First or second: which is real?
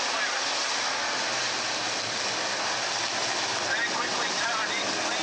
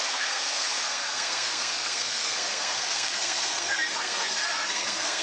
first